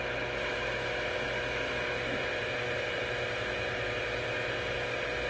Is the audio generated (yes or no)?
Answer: no